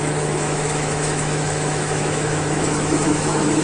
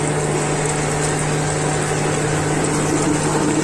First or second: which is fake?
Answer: first